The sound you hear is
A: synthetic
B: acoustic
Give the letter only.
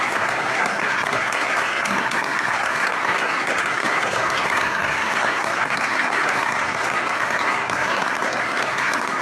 A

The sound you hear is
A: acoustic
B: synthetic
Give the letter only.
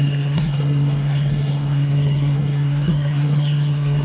B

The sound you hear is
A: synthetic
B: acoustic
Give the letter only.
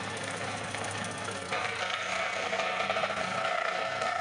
A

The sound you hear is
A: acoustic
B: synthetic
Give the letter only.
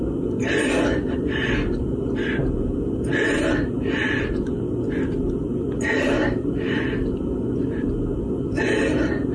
A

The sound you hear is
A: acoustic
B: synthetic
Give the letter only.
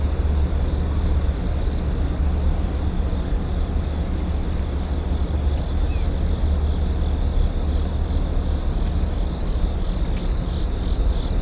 A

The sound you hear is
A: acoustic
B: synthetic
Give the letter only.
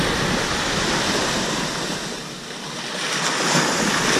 A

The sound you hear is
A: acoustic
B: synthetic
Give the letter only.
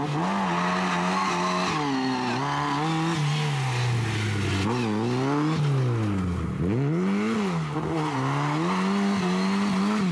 A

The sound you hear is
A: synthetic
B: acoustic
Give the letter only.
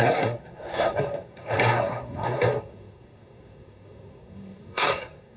A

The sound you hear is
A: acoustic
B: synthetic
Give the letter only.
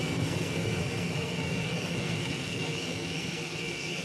B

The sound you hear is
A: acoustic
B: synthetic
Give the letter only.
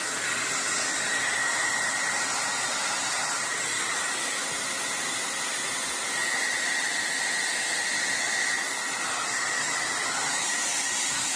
A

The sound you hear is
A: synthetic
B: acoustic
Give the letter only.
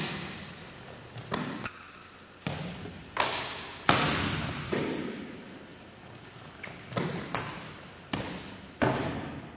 B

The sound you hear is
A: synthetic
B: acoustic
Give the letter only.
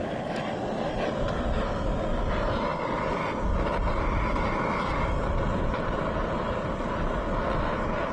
B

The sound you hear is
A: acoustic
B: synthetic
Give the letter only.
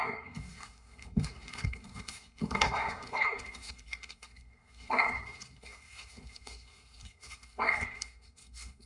B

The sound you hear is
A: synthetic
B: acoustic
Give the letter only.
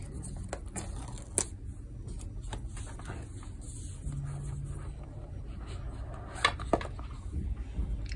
B